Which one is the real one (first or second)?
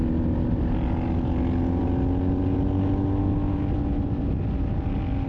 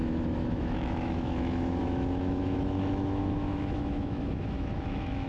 first